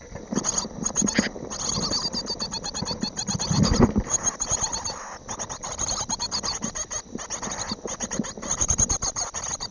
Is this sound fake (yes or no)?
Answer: no